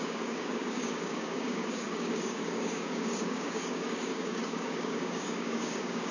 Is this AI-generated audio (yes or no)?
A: yes